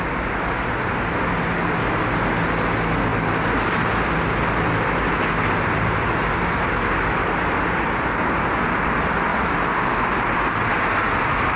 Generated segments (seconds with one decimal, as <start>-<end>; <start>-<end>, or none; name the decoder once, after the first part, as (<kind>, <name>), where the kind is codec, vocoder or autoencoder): none